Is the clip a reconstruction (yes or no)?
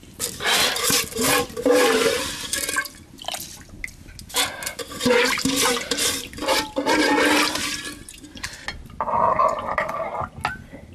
no